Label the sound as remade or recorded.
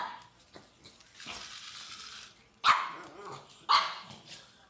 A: recorded